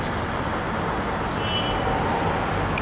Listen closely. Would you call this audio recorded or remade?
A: recorded